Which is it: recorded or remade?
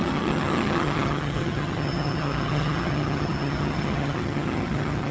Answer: remade